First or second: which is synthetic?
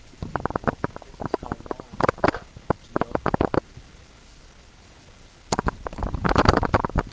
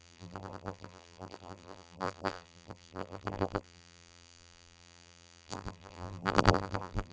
second